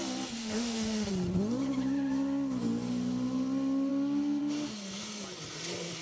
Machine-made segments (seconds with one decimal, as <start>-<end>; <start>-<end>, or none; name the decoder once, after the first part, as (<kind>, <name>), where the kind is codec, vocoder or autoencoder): 0.4-1.1 (autoencoder, DAC-VAE)

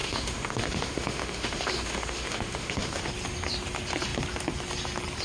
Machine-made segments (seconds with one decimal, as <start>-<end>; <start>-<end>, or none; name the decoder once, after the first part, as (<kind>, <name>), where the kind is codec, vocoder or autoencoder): 0.0-3.1 (autoencoder, DAC-VAE)